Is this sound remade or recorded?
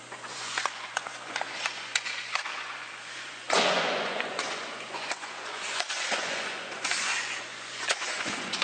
remade